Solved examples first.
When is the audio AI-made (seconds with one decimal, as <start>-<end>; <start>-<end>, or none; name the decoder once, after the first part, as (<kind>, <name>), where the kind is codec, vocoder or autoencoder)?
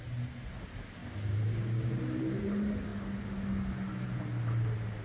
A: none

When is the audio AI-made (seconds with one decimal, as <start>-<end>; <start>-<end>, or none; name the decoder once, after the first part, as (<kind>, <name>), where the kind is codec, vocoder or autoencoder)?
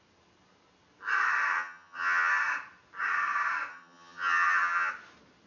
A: 1.5-2.3 (vocoder, HiFi-GAN); 3.7-4.9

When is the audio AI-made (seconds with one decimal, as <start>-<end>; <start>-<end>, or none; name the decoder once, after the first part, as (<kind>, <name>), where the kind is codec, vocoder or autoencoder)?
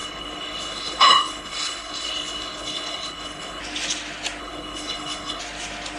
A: 0.0-3.6 (codec, HILCodec); 4.4-5.4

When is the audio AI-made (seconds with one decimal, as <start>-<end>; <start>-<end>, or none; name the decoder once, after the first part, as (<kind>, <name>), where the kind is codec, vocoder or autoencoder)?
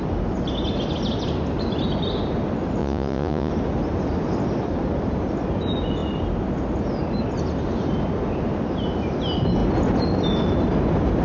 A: 2.8-3.5 (vocoder, Vocos)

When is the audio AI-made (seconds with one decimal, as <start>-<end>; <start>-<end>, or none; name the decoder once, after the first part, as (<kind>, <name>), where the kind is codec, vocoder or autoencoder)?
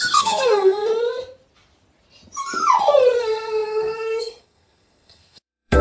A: 0.0-0.9 (codec, SNAC); 3.2-5.8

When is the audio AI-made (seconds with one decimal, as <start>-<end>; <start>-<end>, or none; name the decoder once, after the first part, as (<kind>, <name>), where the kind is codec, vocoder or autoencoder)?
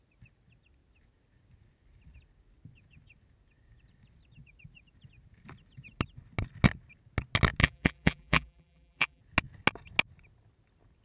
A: 7.6-9.2 (vocoder, BigVGAN v2)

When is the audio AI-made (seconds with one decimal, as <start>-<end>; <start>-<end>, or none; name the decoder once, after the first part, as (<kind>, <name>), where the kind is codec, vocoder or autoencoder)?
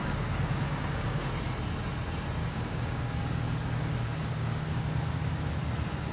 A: 0.0-1.3 (codec, DAC); 2.4-3.2; 3.8-5.5